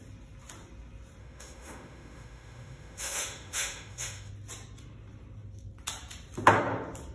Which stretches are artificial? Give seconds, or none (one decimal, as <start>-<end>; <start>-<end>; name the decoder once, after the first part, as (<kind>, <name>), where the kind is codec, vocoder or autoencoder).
1.2-4.3 (autoencoder, DAC-VAE)